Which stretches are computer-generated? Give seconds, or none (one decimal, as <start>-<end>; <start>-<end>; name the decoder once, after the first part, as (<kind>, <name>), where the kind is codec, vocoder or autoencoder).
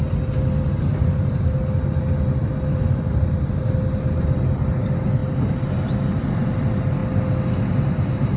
none